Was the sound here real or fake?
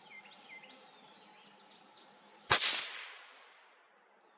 real